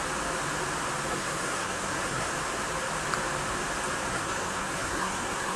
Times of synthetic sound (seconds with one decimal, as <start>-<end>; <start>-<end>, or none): 1.1-2.3; 4.1-5.6

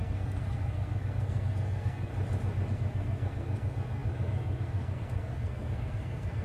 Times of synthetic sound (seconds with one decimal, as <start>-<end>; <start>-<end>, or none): 0.0-2.1; 2.7-6.4

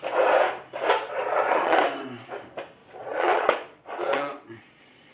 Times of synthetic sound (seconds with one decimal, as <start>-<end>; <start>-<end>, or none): 1.2-1.8; 2.8-5.1

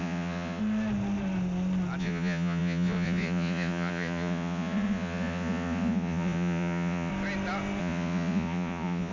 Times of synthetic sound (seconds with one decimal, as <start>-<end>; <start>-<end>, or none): 0.0-0.6; 2.0-7.1; 7.8-9.1

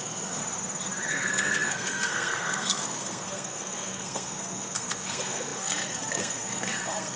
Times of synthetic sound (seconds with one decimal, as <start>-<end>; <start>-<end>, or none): 0.0-0.4; 1.1-7.2

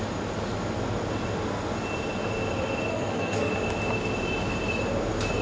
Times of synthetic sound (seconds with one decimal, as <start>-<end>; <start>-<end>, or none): 2.9-3.5

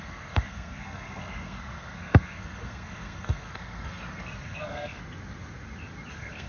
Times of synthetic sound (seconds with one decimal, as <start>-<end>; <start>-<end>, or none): 0.0-5.0; 6.1-6.5

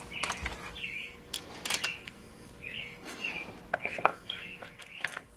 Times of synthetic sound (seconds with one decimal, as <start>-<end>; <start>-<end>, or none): 0.8-1.5; 2.0-3.3; 3.7-5.4